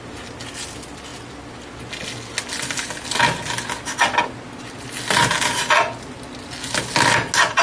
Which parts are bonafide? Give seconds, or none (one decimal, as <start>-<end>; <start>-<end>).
0.0-7.6

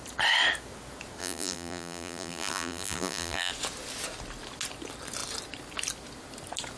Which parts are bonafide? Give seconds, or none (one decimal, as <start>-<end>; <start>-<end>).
0.0-1.2; 3.5-6.8

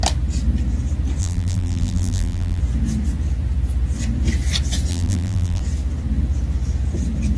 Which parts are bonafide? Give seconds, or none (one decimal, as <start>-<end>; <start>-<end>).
0.0-1.2; 2.6-4.9; 5.6-7.4

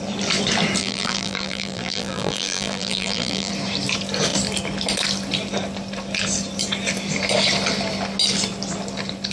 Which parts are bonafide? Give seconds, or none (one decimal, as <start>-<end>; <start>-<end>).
0.0-0.8; 3.5-9.3

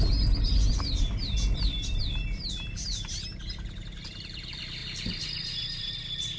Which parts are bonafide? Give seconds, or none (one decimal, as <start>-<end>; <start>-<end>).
0.0-4.8; 5.9-6.4